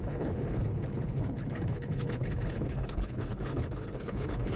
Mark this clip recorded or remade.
remade